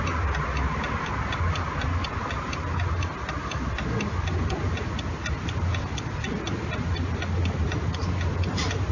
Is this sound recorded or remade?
recorded